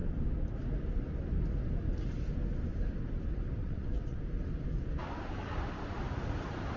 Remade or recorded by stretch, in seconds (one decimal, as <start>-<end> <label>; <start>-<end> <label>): 0.0-3.6 recorded; 3.6-4.2 remade; 4.2-6.8 recorded